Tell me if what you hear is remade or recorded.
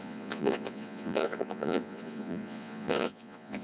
remade